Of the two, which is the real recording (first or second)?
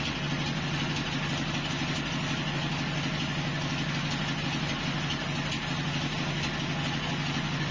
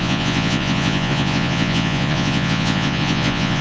first